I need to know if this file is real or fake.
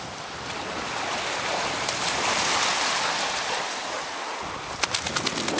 real